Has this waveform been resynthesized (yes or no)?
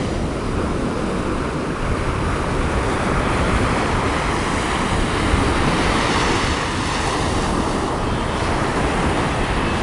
no